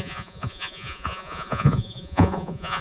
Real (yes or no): no